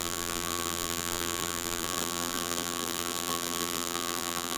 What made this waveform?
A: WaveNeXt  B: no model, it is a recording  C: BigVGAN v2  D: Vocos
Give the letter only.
C